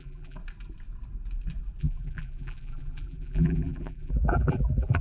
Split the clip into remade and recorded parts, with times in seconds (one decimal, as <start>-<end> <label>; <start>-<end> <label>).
0.0-0.4 remade; 0.4-1.8 recorded; 1.8-5.0 remade